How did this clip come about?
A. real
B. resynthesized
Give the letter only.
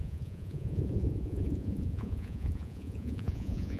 B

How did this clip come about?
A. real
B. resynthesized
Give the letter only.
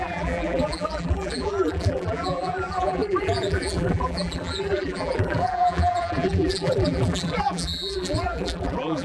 B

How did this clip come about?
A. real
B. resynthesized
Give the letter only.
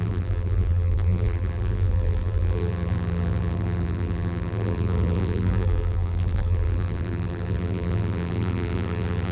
B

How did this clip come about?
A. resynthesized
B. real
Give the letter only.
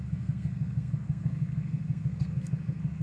A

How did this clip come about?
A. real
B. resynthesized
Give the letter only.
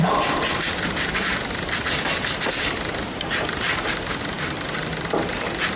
B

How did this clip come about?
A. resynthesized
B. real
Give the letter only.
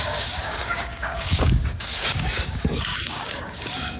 A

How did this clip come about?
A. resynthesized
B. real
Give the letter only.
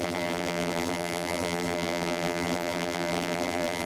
A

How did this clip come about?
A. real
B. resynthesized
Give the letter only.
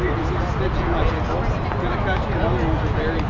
A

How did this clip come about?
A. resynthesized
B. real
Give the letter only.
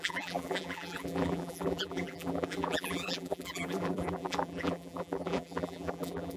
A